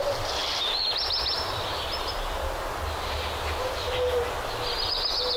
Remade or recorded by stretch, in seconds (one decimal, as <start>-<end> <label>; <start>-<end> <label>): 0.0-5.4 recorded